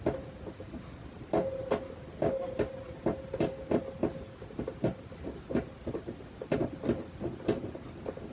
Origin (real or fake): real